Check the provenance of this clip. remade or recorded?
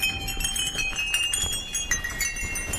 recorded